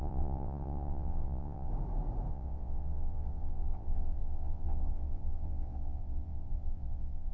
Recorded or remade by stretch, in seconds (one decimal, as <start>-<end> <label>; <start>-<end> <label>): 0.0-1.7 remade; 1.7-2.3 recorded; 2.3-7.3 remade